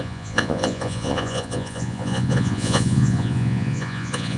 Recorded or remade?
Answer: remade